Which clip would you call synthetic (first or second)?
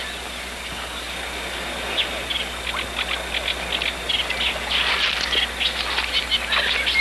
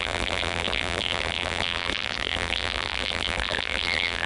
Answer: second